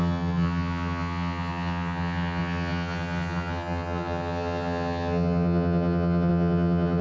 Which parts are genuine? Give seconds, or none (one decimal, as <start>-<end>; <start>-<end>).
none